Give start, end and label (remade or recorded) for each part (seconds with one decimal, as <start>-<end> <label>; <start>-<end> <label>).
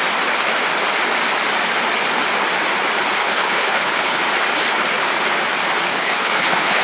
0.0-3.2 recorded; 3.2-4.2 remade; 4.2-5.9 recorded; 5.9-6.8 remade